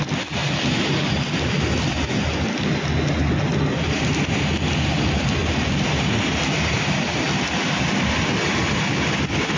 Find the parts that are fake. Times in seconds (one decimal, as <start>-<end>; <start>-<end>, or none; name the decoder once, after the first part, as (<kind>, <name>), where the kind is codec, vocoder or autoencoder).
5.4-6.1 (vocoder, BigVGAN v2)